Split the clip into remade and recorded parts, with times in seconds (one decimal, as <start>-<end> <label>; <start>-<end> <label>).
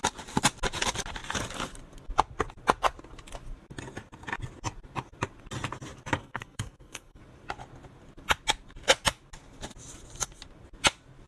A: 0.0-6.2 recorded; 6.2-7.2 remade; 7.2-11.3 recorded